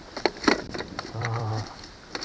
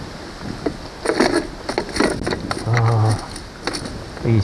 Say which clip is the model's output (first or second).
first